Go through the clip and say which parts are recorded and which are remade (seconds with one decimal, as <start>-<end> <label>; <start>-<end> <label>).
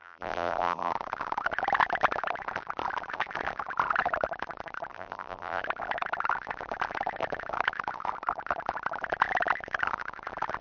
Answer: 0.0-0.9 remade; 0.9-4.9 recorded; 4.9-5.6 remade; 5.6-10.6 recorded